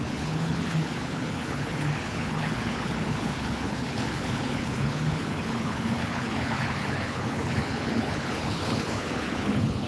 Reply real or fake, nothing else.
fake